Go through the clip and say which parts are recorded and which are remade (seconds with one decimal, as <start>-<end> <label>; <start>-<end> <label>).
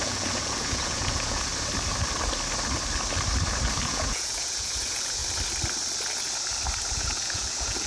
0.0-1.5 remade; 1.5-3.9 recorded; 3.9-5.2 remade; 5.2-6.9 recorded; 6.9-7.9 remade